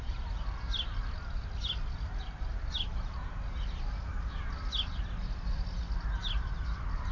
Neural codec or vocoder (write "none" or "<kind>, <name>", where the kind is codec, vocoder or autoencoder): none